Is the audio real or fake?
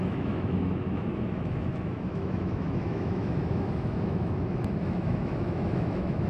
fake